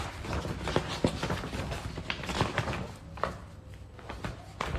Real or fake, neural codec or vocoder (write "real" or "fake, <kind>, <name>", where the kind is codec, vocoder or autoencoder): real